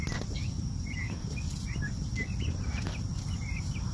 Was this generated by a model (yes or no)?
yes